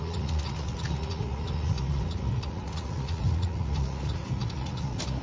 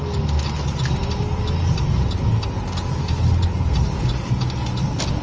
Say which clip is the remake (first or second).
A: first